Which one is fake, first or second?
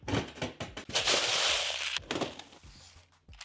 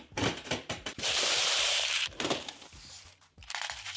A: second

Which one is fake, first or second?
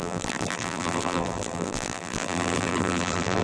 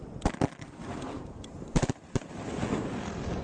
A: first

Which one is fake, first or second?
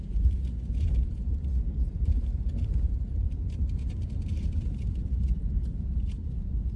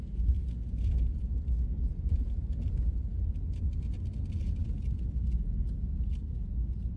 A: first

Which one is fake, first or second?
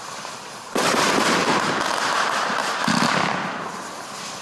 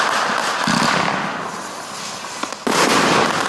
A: first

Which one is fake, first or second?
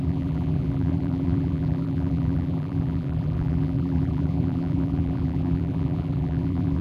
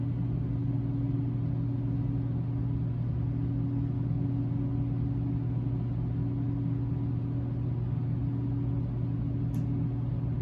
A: first